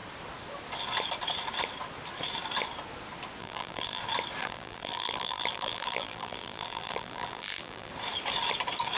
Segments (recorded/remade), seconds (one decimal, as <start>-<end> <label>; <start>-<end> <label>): 0.0-3.4 recorded; 3.4-4.0 remade; 4.0-4.4 recorded; 4.4-7.9 remade; 7.9-9.0 recorded